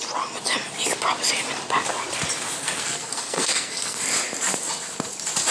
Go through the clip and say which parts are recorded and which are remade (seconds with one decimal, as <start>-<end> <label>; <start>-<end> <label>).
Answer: 0.0-2.6 recorded; 2.6-4.0 remade; 4.0-5.5 recorded